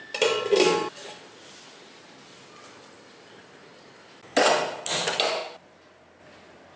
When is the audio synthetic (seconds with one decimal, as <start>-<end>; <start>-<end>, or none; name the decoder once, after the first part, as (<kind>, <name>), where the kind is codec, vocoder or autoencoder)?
none

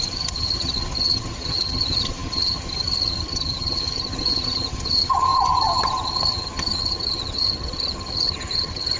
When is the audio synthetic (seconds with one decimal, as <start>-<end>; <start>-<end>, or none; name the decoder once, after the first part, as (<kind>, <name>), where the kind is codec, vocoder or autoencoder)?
0.0-9.0 (vocoder, HiFi-GAN)

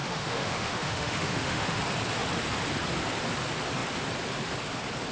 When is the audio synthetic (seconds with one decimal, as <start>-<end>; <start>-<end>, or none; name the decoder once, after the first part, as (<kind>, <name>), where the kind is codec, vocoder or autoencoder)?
0.0-1.8 (autoencoder, DAC-VAE)

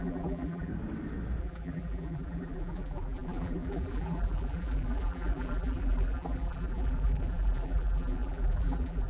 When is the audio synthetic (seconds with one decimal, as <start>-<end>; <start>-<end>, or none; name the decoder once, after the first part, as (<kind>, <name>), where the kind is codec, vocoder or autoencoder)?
0.0-0.7 (vocoder, BigVGAN v2); 1.4-9.1

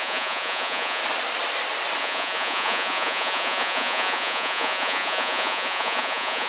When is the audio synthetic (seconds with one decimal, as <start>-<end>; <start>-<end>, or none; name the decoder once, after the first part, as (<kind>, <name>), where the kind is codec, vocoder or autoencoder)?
0.0-1.0 (vocoder, Vocos); 2.0-6.5

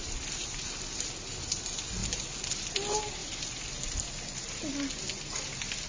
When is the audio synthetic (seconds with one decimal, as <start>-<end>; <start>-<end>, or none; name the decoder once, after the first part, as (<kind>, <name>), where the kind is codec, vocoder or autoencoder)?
none

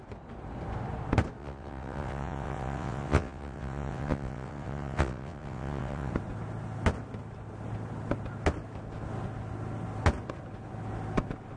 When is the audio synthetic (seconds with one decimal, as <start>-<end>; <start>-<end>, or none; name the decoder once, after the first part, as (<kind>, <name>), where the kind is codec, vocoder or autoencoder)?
1.4-6.1 (vocoder, WaveNeXt)